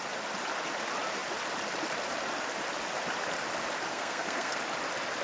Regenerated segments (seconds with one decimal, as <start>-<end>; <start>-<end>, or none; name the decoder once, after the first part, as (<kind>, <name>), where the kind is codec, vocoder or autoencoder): 3.9-4.6 (codec, SNAC)

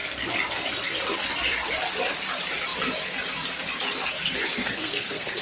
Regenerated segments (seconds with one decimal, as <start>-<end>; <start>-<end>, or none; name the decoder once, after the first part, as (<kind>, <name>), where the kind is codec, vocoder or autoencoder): 4.5-5.4 (codec, SNAC)

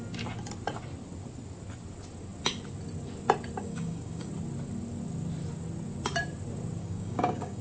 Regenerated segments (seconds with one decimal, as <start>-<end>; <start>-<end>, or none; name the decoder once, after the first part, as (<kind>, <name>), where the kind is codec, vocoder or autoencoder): 3.6-4.3 (codec, DAC); 6.8-7.6

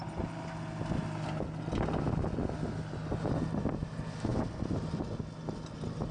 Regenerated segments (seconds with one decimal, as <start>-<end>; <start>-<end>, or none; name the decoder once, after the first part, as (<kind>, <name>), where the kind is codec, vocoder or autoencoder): none

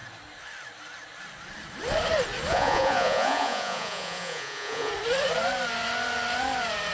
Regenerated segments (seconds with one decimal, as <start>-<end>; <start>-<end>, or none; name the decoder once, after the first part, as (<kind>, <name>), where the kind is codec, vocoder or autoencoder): 2.5-4.9 (vocoder, Vocos)

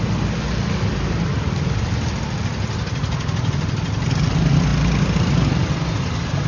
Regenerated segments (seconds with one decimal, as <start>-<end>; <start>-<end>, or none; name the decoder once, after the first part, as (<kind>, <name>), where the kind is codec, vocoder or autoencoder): none